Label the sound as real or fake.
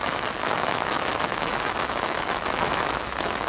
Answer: fake